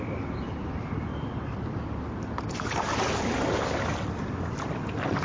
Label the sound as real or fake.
real